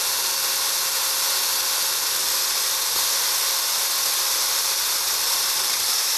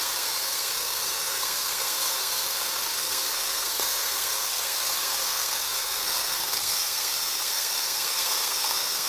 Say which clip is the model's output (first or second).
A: second